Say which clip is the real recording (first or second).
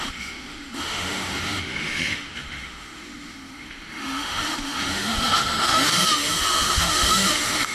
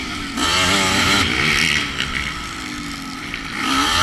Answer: second